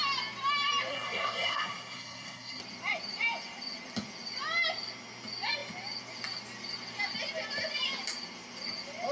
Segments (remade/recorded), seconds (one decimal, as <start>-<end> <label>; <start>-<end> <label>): 0.0-0.9 recorded; 0.9-2.6 remade; 2.6-9.1 recorded

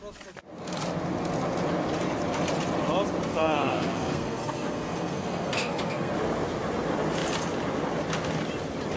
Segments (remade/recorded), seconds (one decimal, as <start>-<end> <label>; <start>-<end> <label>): 0.0-3.3 recorded; 3.3-6.1 remade; 6.1-9.0 recorded

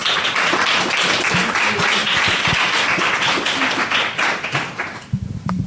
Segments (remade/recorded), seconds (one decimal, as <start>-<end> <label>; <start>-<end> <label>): 0.0-5.7 recorded

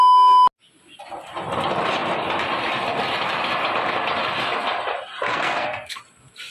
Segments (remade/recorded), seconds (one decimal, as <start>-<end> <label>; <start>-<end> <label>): 0.0-5.3 recorded; 5.3-6.0 remade; 6.0-6.5 recorded